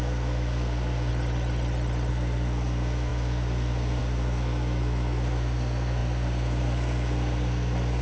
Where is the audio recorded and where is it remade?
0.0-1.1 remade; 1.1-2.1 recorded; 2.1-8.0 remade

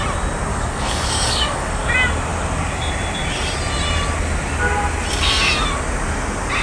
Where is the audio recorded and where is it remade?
0.0-0.5 recorded; 0.5-1.9 remade; 1.9-6.6 recorded